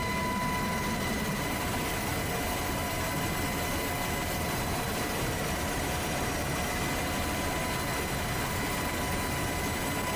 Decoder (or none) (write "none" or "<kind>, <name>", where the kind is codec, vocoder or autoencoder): none